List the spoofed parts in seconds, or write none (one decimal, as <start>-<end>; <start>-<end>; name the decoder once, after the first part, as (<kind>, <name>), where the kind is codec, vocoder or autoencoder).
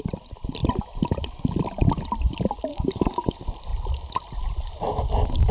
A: 2.7-3.3 (codec, DAC)